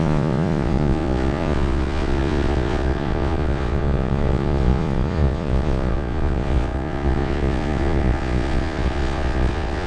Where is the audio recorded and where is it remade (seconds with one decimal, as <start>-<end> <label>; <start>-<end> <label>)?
0.0-9.9 remade